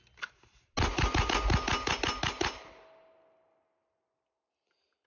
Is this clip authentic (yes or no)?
yes